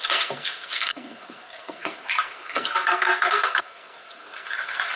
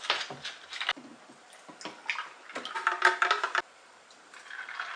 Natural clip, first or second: second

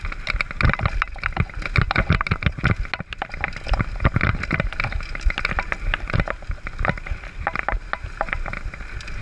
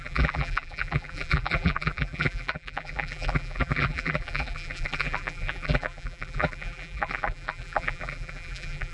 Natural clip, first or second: first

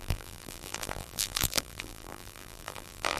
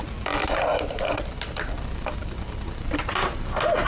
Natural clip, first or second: second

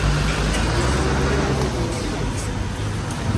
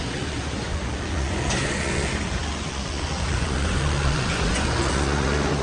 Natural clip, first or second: first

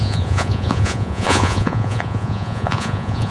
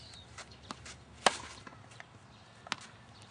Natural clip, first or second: second